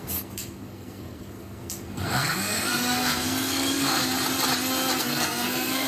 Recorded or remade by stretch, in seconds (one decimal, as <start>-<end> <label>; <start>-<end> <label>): 0.0-4.0 remade; 4.0-5.0 recorded; 5.0-5.9 remade